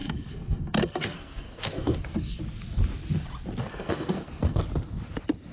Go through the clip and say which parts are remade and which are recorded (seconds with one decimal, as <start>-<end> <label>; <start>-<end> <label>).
0.0-2.4 remade; 2.4-3.7 recorded; 3.7-4.6 remade; 4.6-5.5 recorded

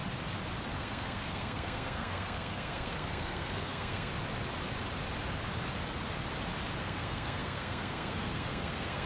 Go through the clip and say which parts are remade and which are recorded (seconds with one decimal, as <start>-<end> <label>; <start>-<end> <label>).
0.0-0.8 recorded; 0.8-4.1 remade; 4.1-6.8 recorded; 6.8-9.1 remade

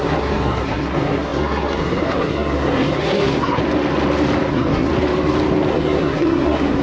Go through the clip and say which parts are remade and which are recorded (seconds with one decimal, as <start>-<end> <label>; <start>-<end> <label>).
0.0-3.6 remade; 3.6-4.5 recorded; 4.5-4.9 remade; 4.9-5.7 recorded; 5.7-6.8 remade

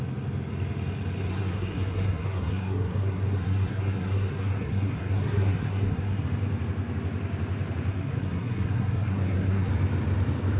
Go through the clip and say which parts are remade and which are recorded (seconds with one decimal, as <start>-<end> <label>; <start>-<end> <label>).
0.0-1.3 recorded; 1.3-6.2 remade; 6.2-7.9 recorded; 7.9-9.7 remade; 9.7-10.6 recorded

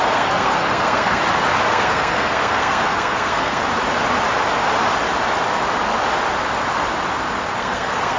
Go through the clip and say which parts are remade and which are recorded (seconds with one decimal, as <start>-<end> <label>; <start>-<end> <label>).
0.0-1.2 remade; 1.2-1.7 recorded; 1.7-3.6 remade; 3.6-7.6 recorded; 7.6-8.2 remade